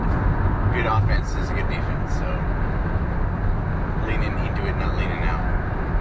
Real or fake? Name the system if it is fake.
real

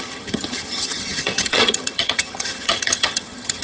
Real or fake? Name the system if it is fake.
fake, vocoder, HiFi-GAN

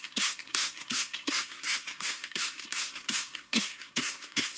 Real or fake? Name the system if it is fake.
fake, codec, SNAC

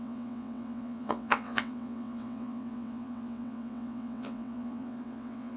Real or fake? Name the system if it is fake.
fake, vocoder, WaveNeXt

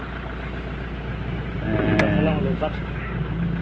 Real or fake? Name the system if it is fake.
real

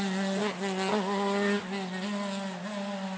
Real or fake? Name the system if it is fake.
real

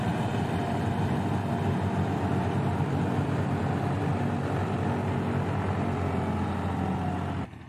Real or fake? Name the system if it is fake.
real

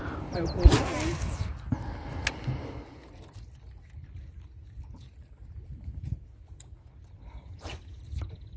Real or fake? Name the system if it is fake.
real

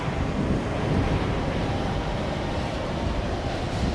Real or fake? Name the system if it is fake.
fake, vocoder, BigVGAN v2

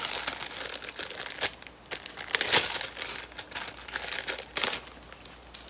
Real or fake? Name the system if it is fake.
real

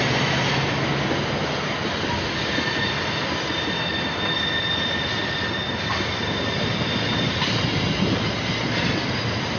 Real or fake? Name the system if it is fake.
real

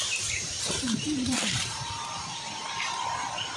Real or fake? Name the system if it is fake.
fake, vocoder, BigVGAN v2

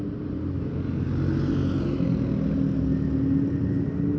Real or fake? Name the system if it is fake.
real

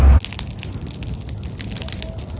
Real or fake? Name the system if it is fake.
real